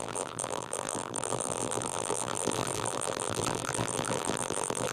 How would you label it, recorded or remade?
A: remade